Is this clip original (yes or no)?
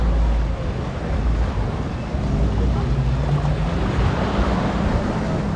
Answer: yes